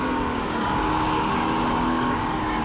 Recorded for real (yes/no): no